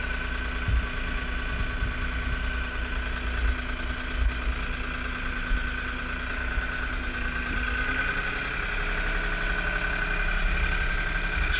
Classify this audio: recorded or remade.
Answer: recorded